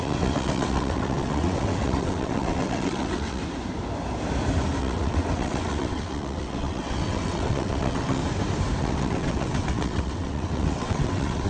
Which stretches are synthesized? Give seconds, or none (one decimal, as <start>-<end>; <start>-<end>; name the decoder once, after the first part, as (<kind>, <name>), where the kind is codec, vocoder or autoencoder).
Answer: 0.0-3.4 (vocoder, WaveNeXt); 4.8-8.2; 8.8-11.5